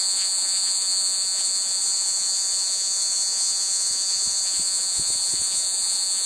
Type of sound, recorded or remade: remade